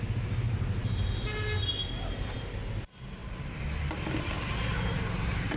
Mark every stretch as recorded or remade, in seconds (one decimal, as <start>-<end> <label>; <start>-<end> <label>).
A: 0.0-5.6 recorded